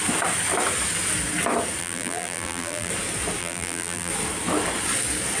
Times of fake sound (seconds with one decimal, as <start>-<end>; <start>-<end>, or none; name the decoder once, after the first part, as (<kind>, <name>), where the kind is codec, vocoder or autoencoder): 1.8-2.9 (vocoder, BigVGAN v2); 3.4-4.1